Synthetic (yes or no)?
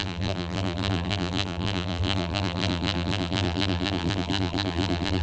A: yes